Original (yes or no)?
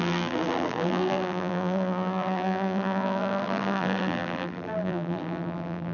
no